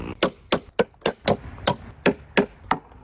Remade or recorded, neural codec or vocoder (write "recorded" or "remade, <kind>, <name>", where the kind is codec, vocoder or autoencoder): recorded